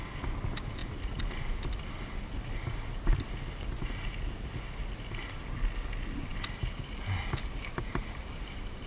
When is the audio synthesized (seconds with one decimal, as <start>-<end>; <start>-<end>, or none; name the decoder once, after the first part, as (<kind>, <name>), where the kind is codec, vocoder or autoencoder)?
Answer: 6.3-8.9 (vocoder, BigVGAN v2)